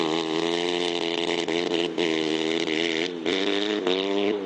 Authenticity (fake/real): real